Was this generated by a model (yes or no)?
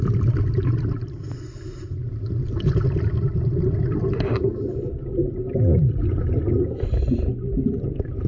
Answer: no